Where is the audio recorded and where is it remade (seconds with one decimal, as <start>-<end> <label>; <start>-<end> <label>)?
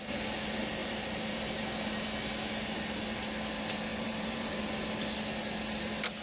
0.0-0.8 recorded; 0.8-1.6 remade; 1.6-3.9 recorded; 3.9-4.7 remade; 4.7-6.2 recorded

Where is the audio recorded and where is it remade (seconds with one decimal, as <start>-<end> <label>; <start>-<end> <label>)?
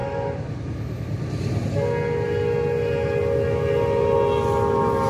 0.0-5.1 recorded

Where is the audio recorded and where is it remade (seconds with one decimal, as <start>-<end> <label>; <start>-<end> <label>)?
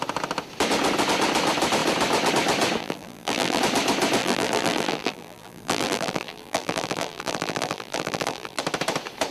0.0-2.8 recorded; 2.8-3.6 remade; 3.6-4.2 recorded; 4.2-8.6 remade; 8.6-9.3 recorded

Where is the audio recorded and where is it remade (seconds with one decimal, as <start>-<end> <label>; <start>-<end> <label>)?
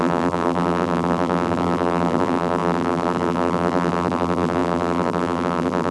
0.0-5.9 remade